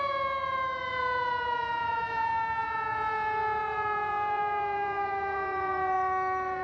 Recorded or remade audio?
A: remade